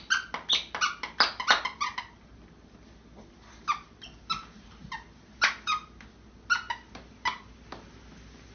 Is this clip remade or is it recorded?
recorded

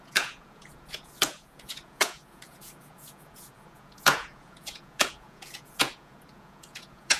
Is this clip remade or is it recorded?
remade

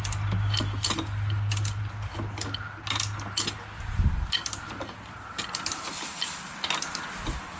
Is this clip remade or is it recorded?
recorded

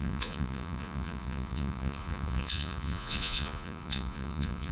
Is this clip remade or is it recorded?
remade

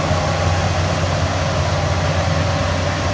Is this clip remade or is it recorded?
recorded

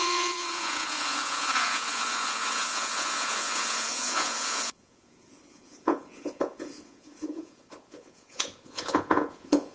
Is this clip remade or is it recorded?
remade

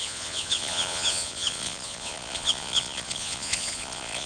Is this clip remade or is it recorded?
remade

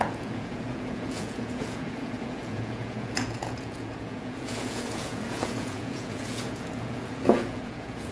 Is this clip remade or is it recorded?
remade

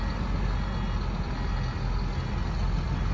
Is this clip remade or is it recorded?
recorded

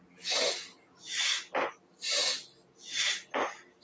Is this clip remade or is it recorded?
recorded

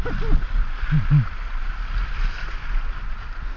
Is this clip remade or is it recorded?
recorded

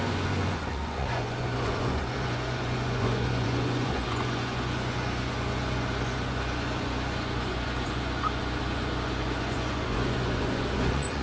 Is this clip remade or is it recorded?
remade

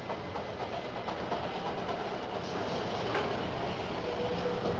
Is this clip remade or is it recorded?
recorded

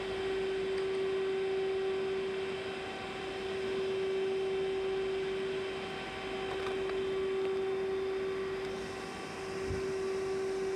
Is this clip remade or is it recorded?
recorded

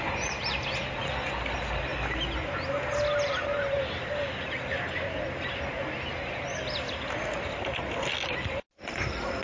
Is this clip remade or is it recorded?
recorded